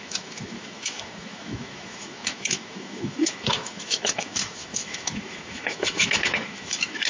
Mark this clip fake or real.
fake